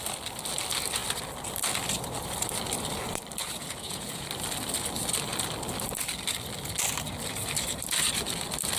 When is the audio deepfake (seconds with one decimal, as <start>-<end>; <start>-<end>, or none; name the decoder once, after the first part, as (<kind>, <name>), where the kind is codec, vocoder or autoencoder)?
3.4-4.3 (vocoder, Vocos)